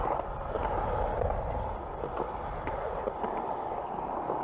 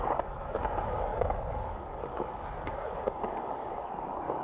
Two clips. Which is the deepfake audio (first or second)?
second